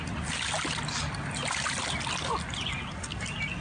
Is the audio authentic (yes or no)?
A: yes